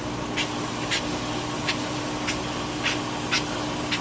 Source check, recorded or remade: recorded